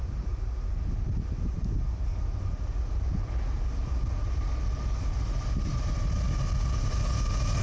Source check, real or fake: real